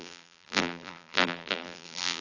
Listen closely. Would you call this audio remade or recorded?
remade